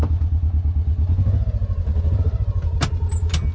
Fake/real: real